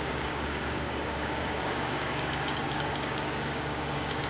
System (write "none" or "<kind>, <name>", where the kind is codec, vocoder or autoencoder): codec, DAC